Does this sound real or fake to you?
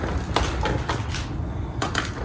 real